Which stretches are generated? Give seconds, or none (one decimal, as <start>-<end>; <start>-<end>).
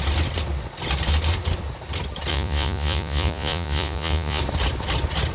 2.3-4.4